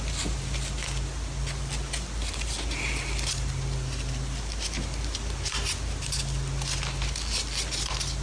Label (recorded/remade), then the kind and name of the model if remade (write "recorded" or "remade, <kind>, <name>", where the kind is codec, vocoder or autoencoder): recorded